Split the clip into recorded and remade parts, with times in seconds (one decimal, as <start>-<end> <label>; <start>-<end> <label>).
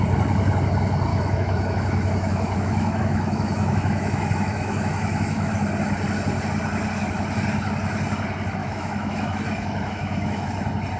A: 0.0-1.1 recorded; 1.1-5.5 remade; 5.5-8.6 recorded; 8.6-10.5 remade; 10.5-11.0 recorded